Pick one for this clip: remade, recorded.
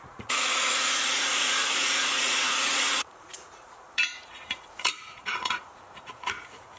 remade